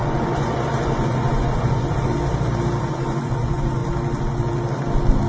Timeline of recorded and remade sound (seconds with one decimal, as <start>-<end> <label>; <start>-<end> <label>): 0.0-2.1 remade; 2.1-2.8 recorded; 2.8-3.8 remade; 3.8-5.3 recorded